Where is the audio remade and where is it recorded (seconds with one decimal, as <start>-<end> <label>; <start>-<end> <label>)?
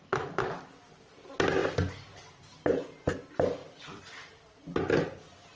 0.0-5.6 recorded